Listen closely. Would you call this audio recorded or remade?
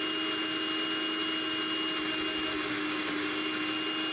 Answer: recorded